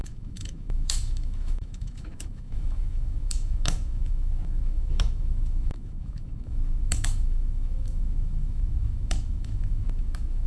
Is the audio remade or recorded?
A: remade